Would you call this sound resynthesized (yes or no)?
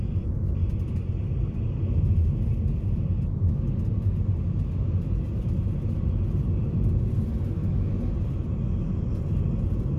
no